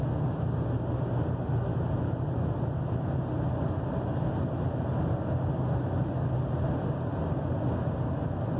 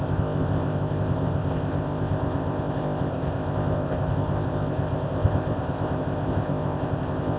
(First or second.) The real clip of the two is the first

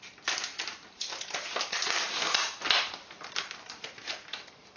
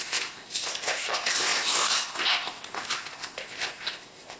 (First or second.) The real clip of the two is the first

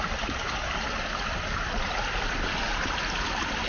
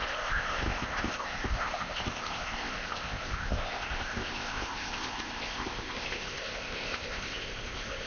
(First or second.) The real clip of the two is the first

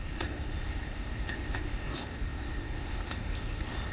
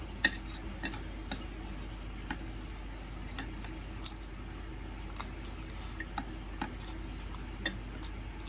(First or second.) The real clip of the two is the second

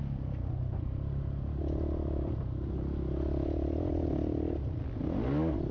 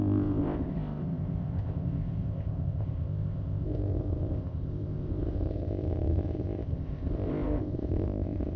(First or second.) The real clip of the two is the first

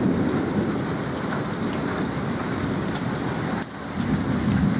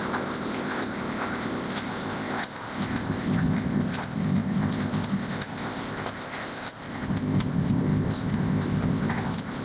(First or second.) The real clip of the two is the first